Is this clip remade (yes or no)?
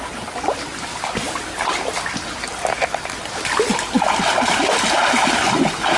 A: no